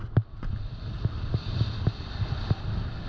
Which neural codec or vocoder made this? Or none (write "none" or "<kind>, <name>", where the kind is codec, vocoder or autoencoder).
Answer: none